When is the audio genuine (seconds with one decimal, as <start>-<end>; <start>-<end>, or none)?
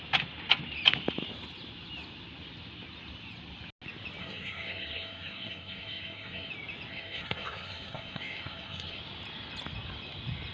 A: 0.0-4.2; 6.5-6.9; 9.0-10.5